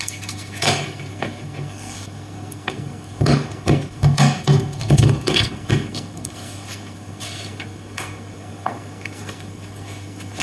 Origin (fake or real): fake